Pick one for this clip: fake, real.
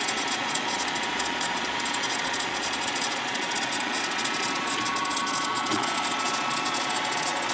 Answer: fake